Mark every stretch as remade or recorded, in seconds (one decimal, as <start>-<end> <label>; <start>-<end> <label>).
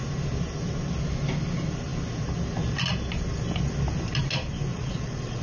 0.0-4.7 recorded; 4.7-5.4 remade